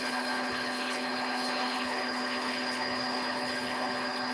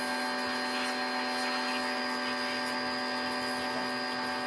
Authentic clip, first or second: second